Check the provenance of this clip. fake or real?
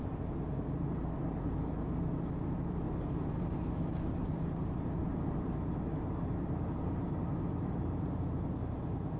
fake